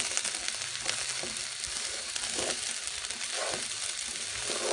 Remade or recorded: recorded